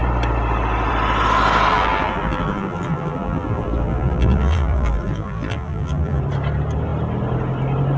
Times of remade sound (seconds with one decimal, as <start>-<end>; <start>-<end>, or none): 1.7-6.2